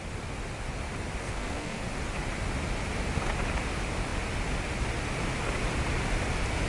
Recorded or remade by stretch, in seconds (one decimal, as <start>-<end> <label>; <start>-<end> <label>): 0.0-1.2 recorded; 1.2-1.8 remade; 1.8-6.7 recorded

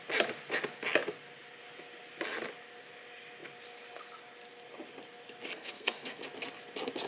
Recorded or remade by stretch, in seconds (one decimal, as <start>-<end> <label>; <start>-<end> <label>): 0.0-5.5 recorded; 5.5-6.2 remade; 6.2-7.1 recorded

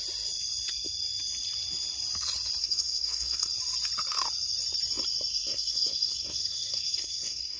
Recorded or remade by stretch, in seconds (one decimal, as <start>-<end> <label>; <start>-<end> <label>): 0.0-2.6 recorded; 2.6-3.5 remade; 3.5-5.3 recorded; 5.3-7.6 remade